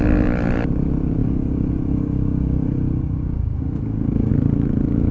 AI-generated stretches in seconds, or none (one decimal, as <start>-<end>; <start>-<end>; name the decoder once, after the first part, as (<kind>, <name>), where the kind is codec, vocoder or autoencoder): 1.2-4.3 (codec, DAC)